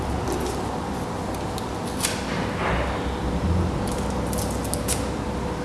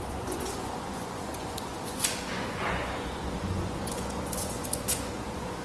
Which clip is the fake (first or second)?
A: second